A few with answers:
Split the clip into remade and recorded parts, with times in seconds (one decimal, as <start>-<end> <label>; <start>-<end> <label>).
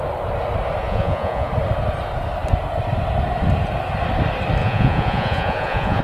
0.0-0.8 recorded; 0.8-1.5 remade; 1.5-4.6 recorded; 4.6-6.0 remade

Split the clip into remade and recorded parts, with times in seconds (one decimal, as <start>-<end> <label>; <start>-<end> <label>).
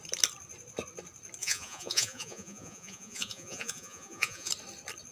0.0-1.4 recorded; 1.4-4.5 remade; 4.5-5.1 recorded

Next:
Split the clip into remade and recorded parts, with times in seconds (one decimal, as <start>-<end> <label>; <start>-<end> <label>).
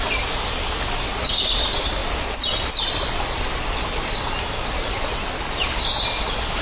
0.0-6.6 recorded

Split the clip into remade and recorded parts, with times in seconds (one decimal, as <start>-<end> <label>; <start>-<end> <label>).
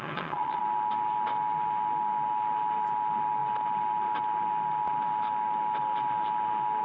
0.0-0.6 remade; 0.6-6.8 recorded